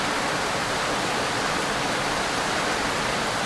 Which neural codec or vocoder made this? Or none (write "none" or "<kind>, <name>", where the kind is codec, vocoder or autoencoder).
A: vocoder, BigVGAN v2